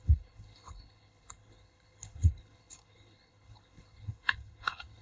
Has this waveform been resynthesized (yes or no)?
yes